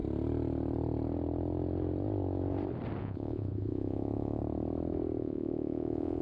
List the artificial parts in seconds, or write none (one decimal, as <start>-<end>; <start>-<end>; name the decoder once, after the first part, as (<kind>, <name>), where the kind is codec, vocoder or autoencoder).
3.0-4.4 (vocoder, Vocos); 5.2-6.2